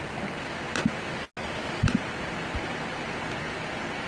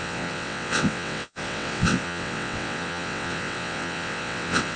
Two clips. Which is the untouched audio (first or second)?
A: first